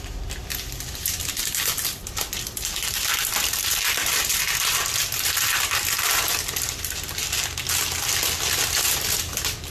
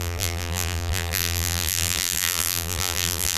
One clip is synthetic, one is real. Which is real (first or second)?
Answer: first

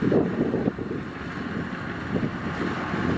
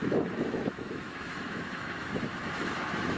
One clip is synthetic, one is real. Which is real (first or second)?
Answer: first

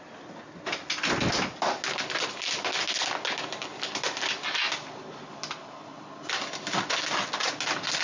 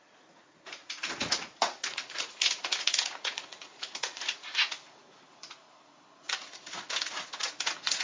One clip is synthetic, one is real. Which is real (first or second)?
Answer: first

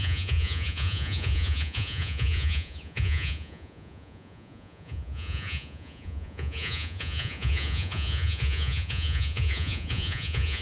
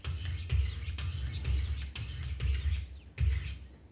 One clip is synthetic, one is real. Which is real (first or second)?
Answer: second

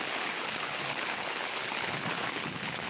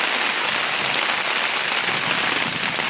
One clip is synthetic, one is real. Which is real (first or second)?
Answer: second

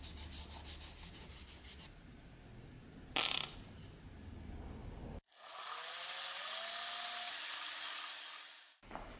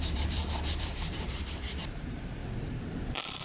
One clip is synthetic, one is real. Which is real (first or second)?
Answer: first